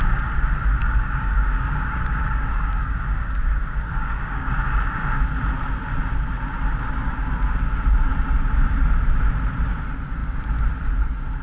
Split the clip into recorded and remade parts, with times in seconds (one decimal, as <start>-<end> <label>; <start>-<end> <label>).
0.0-0.8 recorded; 0.8-4.5 remade; 4.5-11.4 recorded